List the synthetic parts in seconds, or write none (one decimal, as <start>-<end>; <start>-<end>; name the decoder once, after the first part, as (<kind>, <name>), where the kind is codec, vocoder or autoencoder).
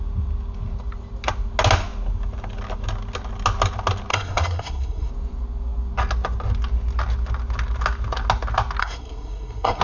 4.1-5.1 (codec, SNAC); 8.8-9.8